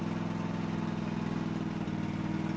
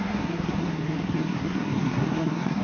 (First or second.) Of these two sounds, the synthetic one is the second